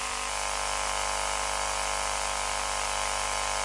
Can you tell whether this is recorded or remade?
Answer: remade